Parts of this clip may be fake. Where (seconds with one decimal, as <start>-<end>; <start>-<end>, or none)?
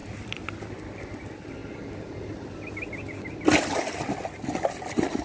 none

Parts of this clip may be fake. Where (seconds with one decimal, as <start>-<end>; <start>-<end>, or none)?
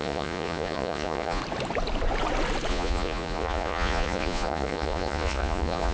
0.0-1.4; 2.7-5.9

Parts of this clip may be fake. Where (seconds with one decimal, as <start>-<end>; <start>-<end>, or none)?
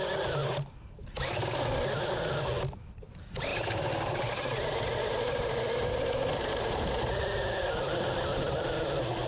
3.5-6.9